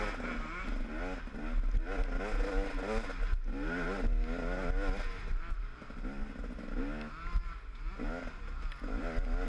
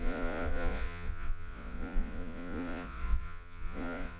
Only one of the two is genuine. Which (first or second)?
first